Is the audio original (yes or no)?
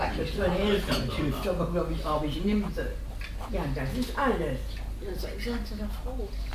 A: yes